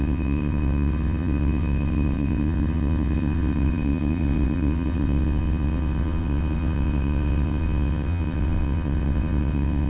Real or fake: fake